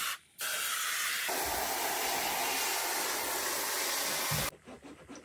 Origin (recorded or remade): recorded